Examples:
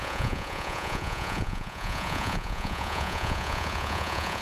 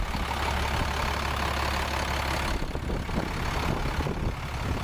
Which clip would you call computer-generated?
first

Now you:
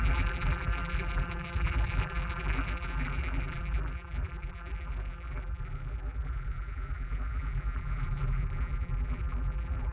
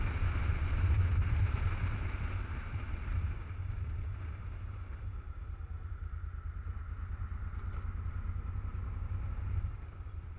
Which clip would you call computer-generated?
first